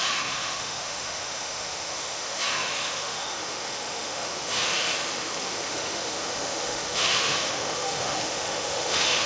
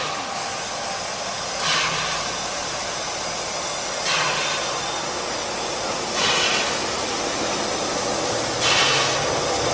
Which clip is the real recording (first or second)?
second